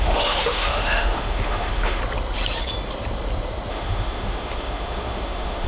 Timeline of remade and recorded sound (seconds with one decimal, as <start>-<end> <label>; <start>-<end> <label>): 0.0-2.0 remade; 2.0-3.7 recorded; 3.7-5.7 remade